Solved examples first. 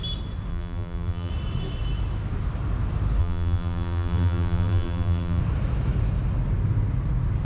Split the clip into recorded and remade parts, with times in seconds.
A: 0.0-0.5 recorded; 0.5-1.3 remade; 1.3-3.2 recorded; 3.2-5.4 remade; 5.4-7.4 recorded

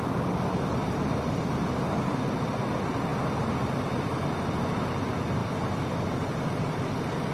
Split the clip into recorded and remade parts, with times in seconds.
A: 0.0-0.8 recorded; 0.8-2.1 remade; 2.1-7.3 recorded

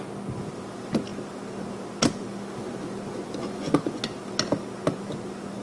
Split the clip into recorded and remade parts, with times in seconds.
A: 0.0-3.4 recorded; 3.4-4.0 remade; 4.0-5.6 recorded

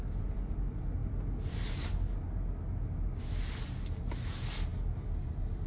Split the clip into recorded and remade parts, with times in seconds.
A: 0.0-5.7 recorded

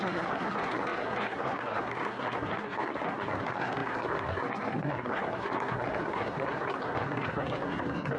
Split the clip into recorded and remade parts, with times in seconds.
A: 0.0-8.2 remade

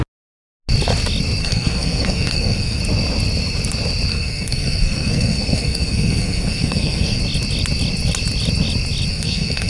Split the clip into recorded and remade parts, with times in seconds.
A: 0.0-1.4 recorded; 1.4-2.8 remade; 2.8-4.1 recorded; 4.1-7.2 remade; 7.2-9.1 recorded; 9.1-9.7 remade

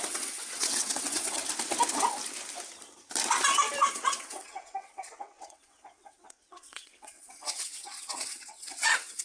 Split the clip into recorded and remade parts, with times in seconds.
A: 0.0-1.4 remade; 1.4-3.9 recorded; 3.9-9.2 remade